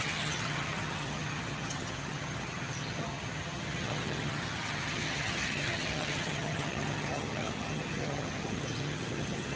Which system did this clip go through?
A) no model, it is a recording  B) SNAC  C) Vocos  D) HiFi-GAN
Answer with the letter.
D